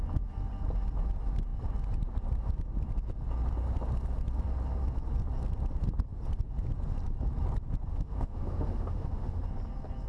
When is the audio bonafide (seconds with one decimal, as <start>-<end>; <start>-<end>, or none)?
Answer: 0.0-7.9; 9.4-10.1